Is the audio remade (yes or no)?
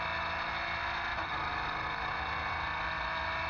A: no